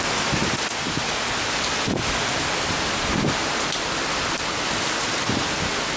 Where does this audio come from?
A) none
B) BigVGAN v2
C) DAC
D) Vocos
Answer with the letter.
A